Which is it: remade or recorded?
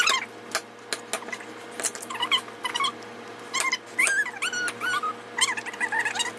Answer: recorded